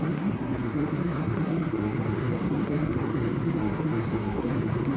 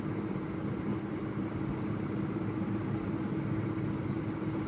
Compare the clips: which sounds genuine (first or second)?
second